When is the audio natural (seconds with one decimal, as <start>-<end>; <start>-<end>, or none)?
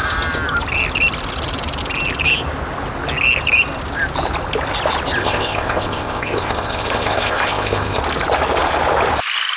0.0-5.2; 8.0-9.6